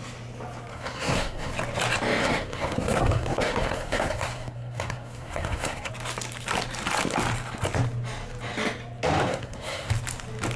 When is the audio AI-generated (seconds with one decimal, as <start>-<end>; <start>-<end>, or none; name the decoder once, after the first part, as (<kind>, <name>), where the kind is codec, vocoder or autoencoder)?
0.7-1.5 (codec, SNAC); 2.2-5.9; 9.3-9.9